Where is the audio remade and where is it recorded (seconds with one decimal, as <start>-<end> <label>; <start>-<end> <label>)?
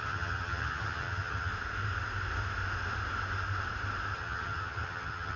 0.0-1.5 remade; 1.5-4.1 recorded; 4.1-5.4 remade